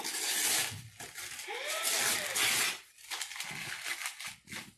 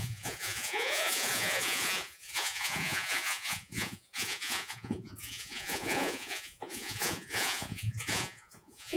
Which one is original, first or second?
first